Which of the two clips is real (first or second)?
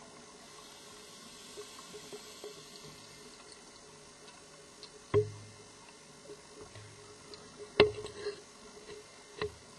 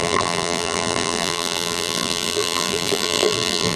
first